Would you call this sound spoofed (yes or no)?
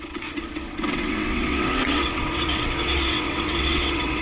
yes